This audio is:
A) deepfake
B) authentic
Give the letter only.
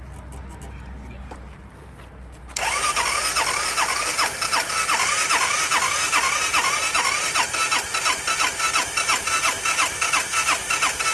B